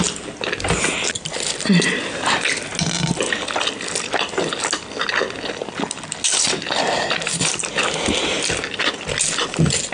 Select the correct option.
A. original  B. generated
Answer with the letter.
A